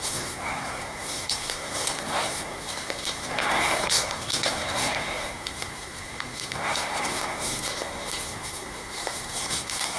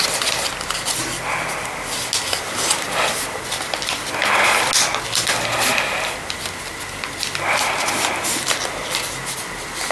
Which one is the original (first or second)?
second